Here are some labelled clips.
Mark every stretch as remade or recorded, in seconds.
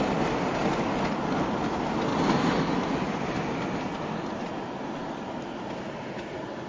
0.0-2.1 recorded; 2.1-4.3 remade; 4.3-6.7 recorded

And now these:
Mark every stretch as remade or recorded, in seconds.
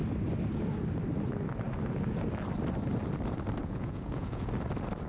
0.0-3.6 recorded; 3.6-4.5 remade; 4.5-5.1 recorded